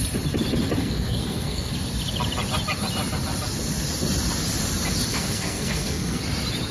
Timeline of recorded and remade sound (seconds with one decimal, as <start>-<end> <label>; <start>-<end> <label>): 0.0-0.8 recorded; 0.8-1.7 remade; 1.7-5.1 recorded; 5.1-6.2 remade; 6.2-6.7 recorded